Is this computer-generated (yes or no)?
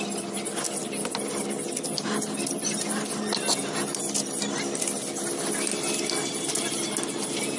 no